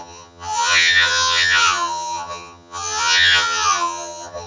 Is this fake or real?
fake